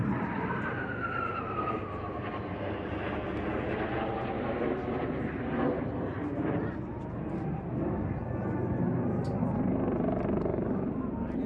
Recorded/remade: recorded